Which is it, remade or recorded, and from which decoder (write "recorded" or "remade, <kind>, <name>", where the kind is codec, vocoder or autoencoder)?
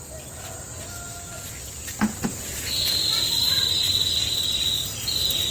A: remade, vocoder, BigVGAN v2